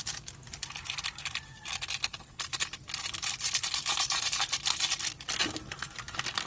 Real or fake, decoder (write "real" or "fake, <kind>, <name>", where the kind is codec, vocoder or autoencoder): real